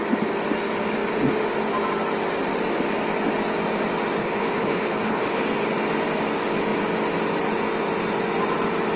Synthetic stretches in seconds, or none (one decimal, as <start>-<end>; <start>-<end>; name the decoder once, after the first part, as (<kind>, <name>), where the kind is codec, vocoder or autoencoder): 4.2-5.4 (codec, HILCodec)